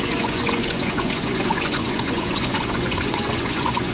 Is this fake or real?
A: fake